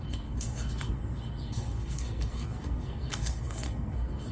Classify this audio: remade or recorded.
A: remade